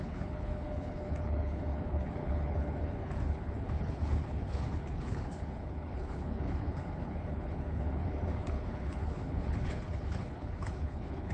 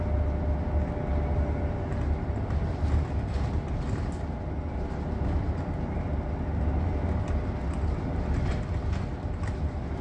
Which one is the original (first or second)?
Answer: second